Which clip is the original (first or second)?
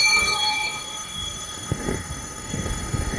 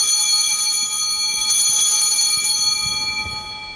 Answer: second